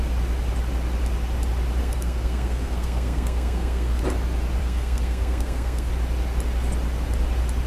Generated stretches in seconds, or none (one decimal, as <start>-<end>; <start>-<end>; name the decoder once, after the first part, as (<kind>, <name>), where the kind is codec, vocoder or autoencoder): 1.8-4.0 (codec, SNAC); 4.6-5.9